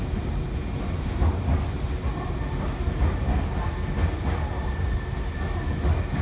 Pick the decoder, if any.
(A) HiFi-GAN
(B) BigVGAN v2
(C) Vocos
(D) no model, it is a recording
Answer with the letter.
D